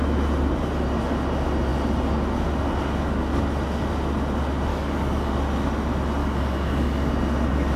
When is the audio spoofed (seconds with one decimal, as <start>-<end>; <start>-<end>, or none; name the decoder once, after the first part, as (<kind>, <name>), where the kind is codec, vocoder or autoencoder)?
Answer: 4.7-5.3 (codec, DAC); 6.2-7.1